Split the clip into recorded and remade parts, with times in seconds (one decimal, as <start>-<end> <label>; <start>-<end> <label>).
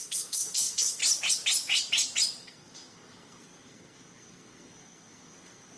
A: 0.0-1.0 remade; 1.0-2.4 recorded; 2.4-5.8 remade